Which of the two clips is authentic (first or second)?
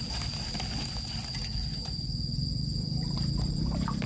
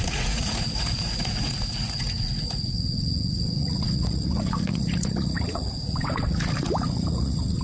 first